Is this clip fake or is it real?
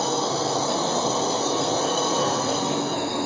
fake